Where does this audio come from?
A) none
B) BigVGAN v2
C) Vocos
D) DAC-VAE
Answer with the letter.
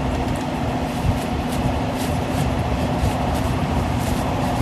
B